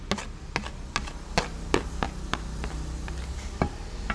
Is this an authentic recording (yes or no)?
yes